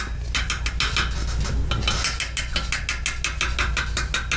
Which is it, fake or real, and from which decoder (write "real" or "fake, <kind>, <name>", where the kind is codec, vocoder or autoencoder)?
real